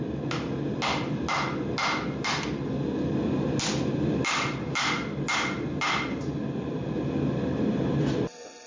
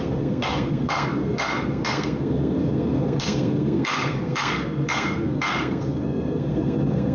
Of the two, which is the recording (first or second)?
first